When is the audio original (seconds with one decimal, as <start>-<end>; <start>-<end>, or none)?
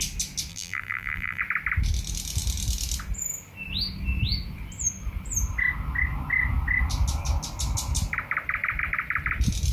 0.0-0.5; 1.4-9.7